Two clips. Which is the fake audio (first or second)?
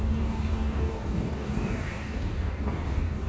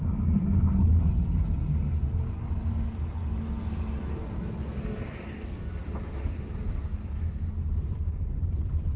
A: first